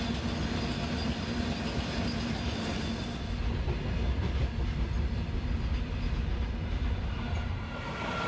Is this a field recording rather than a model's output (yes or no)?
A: yes